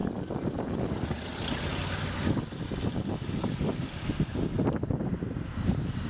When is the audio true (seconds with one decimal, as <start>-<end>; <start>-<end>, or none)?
0.0-0.9; 1.3-5.0